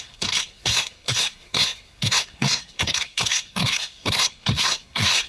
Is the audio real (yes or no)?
no